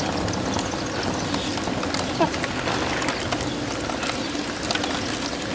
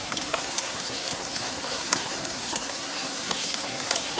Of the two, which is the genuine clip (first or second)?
first